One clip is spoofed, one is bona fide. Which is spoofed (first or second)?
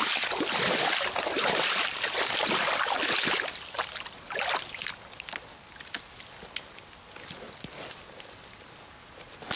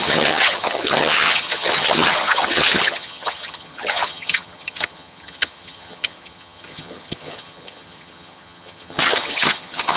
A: second